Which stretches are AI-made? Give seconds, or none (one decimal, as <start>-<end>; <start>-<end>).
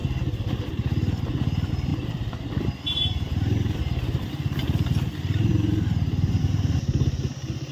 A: 1.9-3.8